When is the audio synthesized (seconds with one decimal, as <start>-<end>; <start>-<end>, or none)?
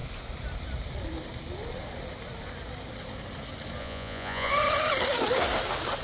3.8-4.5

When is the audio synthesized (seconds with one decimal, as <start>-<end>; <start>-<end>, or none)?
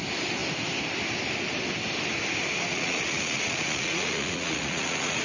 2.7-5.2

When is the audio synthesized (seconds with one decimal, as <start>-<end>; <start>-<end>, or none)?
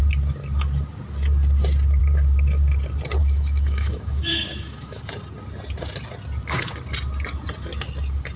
3.2-5.0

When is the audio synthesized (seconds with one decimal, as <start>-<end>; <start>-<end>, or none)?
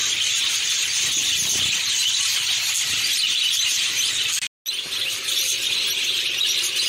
none